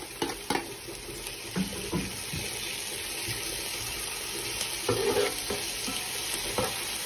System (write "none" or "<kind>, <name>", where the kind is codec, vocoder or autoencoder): none